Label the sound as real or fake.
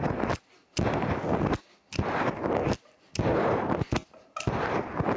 real